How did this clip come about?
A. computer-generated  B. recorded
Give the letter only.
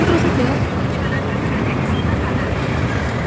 A